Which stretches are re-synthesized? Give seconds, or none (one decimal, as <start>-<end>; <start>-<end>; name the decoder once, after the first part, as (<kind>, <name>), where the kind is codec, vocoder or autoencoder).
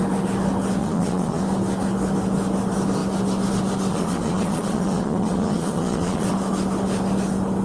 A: 0.8-1.4 (vocoder, Vocos); 3.9-6.3